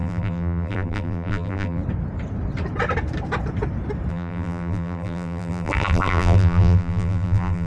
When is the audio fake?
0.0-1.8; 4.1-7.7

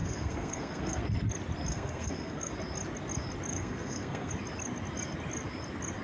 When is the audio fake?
0.0-1.0; 1.7-2.5; 3.5-4.3

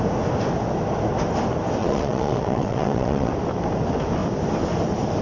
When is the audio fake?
1.8-3.3

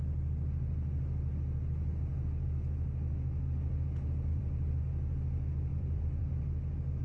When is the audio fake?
4.3-4.8; 5.7-6.3

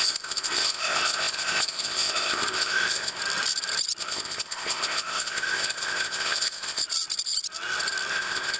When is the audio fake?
0.0-3.2; 4.0-6.8; 8.1-8.6